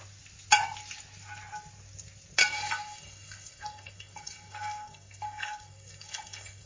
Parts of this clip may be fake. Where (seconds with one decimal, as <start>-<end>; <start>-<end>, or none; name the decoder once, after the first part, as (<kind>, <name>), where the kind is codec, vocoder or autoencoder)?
2.4-6.7 (codec, SNAC)